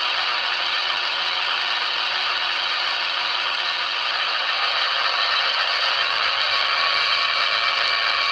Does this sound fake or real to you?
fake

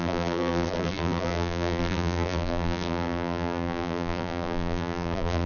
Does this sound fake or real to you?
fake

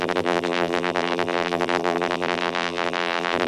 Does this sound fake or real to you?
fake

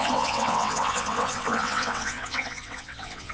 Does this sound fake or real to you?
fake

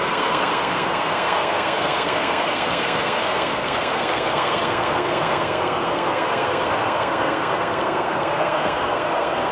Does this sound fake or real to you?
fake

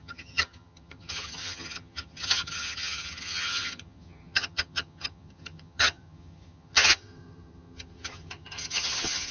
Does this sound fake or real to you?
fake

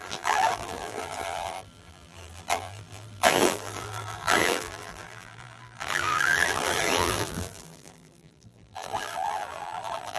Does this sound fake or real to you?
fake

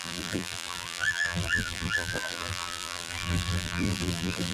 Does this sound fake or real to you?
fake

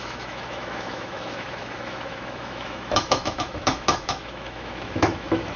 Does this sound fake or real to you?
fake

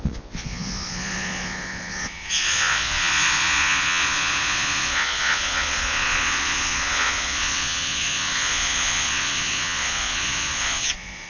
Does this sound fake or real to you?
fake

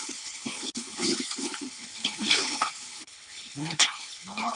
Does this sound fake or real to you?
fake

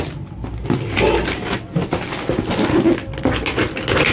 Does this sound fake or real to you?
real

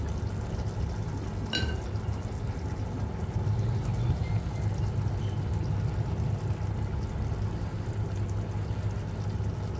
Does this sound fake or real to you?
real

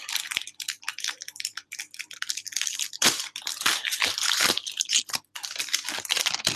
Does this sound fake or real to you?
fake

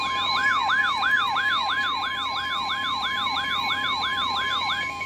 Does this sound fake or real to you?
fake